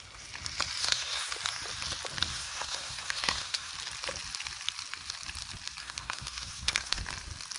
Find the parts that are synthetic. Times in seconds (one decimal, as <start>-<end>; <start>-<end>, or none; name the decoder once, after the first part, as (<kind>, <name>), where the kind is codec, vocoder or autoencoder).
0.8-1.3 (codec, SNAC); 2.3-3.7; 5.8-7.0